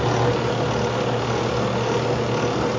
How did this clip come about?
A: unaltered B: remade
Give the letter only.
A